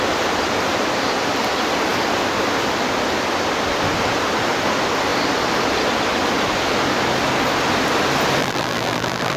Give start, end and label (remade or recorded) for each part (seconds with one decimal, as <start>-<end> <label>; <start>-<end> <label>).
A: 0.0-8.4 recorded; 8.4-9.4 remade